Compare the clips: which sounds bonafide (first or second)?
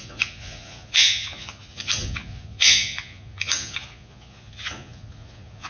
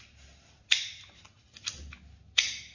second